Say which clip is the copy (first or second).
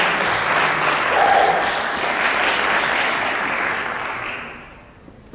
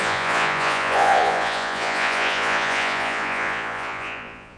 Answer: second